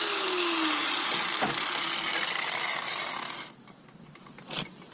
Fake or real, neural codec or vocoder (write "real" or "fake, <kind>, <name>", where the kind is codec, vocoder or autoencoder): real